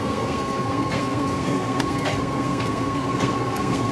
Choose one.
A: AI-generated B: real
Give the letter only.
A